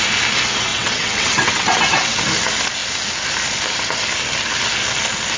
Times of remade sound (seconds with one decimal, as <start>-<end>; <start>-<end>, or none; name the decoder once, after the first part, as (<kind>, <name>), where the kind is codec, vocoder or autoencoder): 0.7-2.2 (vocoder, WaveNeXt)